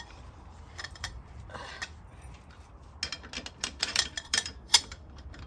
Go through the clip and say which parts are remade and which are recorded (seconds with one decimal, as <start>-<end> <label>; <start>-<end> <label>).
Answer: 0.0-1.7 remade; 1.7-3.5 recorded; 3.5-5.5 remade